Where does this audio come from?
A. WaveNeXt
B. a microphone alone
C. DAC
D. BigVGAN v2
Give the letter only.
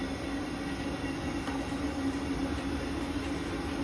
B